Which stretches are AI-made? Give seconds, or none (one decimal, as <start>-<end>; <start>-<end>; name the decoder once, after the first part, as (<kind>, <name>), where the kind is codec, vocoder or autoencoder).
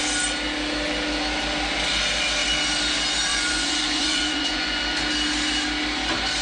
3.3-4.8 (vocoder, Vocos)